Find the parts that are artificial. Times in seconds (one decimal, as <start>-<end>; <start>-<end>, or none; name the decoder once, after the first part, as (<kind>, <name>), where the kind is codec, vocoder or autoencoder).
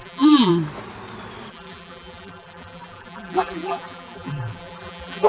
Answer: 0.0-0.5 (vocoder, BigVGAN v2); 1.5-5.3